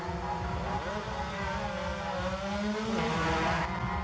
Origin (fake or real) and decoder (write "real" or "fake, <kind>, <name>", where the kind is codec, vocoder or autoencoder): real